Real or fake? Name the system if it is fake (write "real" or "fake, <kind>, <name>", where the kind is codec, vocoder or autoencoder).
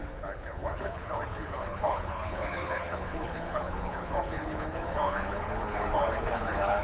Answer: fake, codec, HILCodec